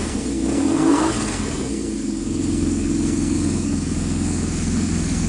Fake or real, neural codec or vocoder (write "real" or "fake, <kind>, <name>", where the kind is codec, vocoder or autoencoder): fake, codec, SNAC